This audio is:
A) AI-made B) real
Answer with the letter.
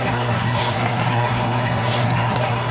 A